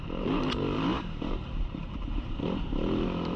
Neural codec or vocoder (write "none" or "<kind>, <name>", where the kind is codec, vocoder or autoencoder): vocoder, BigVGAN v2